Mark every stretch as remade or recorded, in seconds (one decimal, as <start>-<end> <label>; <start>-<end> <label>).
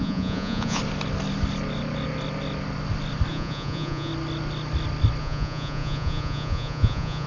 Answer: 0.0-0.8 remade; 0.8-3.3 recorded; 3.3-4.1 remade; 4.1-5.2 recorded; 5.2-7.3 remade